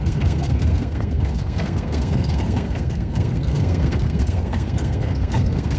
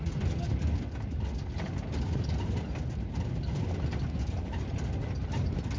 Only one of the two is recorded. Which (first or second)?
second